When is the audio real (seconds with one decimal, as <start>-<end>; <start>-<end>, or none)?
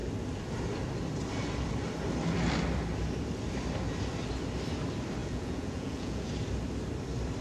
0.0-5.2; 6.3-7.4